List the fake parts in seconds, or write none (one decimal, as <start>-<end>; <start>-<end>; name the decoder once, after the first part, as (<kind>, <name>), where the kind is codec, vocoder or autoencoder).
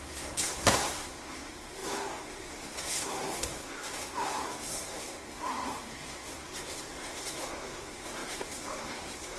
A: 0.0-9.4 (codec, SNAC)